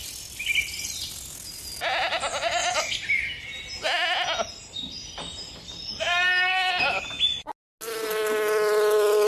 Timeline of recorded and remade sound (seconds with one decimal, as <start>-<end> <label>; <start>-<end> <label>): 0.0-9.3 recorded